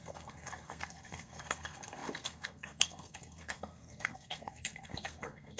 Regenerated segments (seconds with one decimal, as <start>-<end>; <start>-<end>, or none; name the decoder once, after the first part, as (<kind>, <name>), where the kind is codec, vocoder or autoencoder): 0.0-5.6 (codec, SNAC)